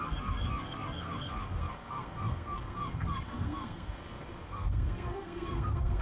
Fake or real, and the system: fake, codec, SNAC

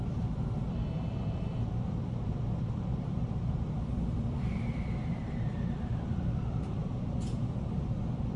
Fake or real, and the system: fake, vocoder, BigVGAN v2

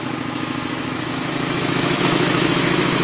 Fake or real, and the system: fake, autoencoder, DAC-VAE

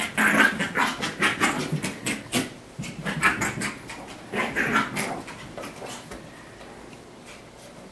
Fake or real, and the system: real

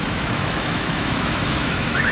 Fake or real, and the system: fake, autoencoder, DAC-VAE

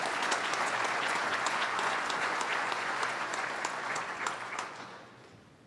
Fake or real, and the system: fake, vocoder, Vocos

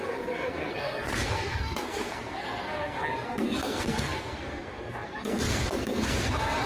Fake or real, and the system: fake, codec, SNAC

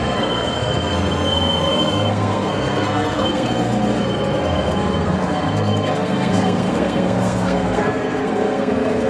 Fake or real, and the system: fake, codec, SNAC